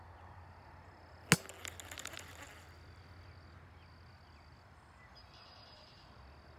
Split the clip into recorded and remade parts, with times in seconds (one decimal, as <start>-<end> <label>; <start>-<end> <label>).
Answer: 0.0-5.2 recorded; 5.2-6.1 remade; 6.1-6.6 recorded